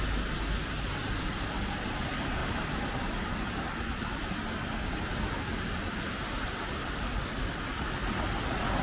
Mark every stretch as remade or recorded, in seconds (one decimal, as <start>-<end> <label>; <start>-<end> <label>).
0.0-8.8 recorded